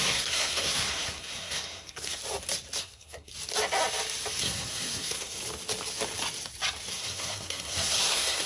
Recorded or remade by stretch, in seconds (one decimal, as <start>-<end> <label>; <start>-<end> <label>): 0.0-2.2 remade; 2.2-2.8 recorded; 2.8-3.3 remade; 3.3-4.4 recorded; 4.4-5.4 remade; 5.4-6.9 recorded; 6.9-8.5 remade